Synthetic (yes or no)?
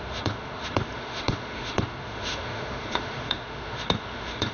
yes